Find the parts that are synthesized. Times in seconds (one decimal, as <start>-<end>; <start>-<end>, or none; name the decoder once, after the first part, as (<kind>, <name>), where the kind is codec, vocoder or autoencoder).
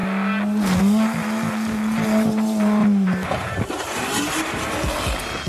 2.8-4.9 (vocoder, BigVGAN v2)